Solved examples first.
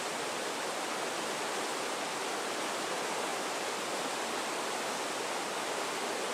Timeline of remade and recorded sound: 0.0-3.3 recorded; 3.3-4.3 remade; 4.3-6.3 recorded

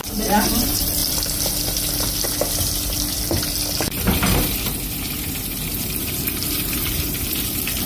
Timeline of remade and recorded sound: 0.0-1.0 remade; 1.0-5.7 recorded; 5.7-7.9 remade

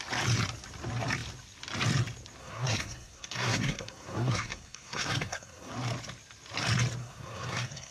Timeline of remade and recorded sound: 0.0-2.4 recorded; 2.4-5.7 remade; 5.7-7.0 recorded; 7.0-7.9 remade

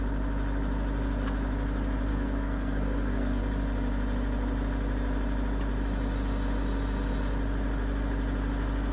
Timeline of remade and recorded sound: 0.0-2.1 recorded; 2.1-3.4 remade; 3.4-8.9 recorded

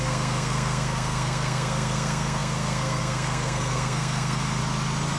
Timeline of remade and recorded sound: 0.0-4.6 remade; 4.6-5.2 recorded

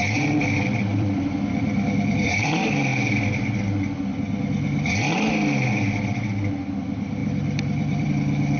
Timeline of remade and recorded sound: 0.0-0.9 recorded; 0.9-2.5 remade; 2.5-7.2 recorded; 7.2-8.1 remade; 8.1-8.6 recorded

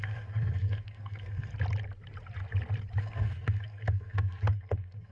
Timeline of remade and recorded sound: 0.0-1.5 remade; 1.5-3.0 recorded; 3.0-5.1 remade

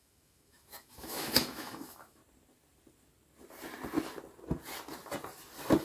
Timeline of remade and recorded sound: 0.0-2.2 remade; 2.2-5.8 recorded